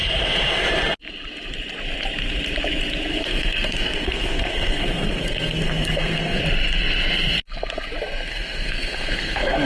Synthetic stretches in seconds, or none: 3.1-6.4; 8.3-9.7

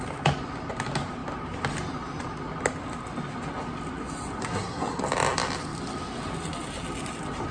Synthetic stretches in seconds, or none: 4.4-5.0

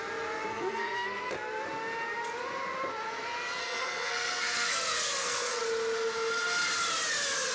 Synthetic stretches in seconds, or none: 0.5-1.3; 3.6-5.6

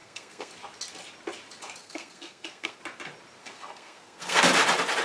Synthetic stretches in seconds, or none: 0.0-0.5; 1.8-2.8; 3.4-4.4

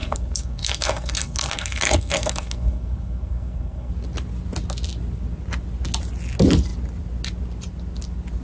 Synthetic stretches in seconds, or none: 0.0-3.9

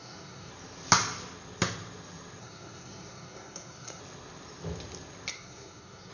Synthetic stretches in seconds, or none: 0.0-0.5; 2.4-4.0; 5.3-6.1